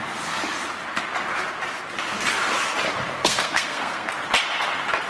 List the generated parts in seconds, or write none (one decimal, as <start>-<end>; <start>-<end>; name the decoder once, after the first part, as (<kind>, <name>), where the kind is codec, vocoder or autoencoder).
3.2-4.1 (codec, SNAC)

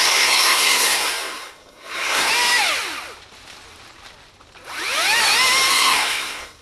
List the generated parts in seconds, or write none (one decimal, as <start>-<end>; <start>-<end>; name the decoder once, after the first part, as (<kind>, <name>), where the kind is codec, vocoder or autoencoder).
0.0-2.3 (codec, SNAC); 5.7-6.6

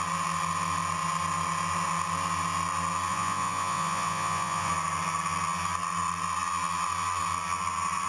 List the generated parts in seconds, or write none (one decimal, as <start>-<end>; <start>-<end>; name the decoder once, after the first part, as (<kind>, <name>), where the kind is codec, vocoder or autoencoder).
3.1-4.7 (vocoder, Vocos)

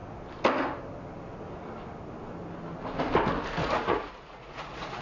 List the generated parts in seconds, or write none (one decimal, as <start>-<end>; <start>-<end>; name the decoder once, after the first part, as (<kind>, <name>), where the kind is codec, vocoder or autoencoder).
3.6-5.0 (vocoder, Vocos)

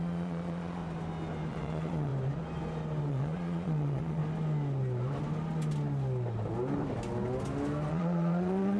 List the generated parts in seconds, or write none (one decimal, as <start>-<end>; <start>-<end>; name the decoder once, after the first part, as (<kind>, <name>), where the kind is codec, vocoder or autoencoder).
0.0-0.8 (vocoder, Vocos); 1.5-2.1; 3.1-4.2; 7.9-8.8

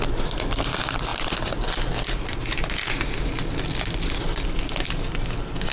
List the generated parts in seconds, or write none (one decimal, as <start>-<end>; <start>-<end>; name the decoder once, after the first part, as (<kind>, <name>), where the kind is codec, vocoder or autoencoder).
none

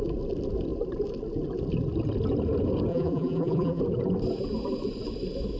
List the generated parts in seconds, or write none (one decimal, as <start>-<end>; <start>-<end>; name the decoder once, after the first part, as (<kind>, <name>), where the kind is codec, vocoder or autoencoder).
2.9-3.8 (vocoder, BigVGAN v2)